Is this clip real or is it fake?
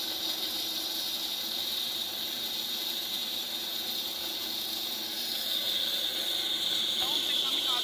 real